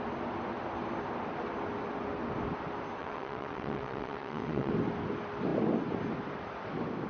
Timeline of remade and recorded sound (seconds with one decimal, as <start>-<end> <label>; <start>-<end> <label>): 0.0-3.0 recorded; 3.0-4.7 remade; 4.7-7.1 recorded